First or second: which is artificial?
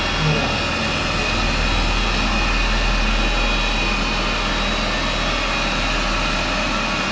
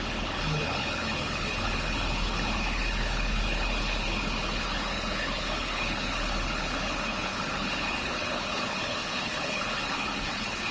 second